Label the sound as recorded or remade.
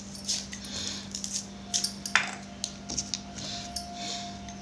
recorded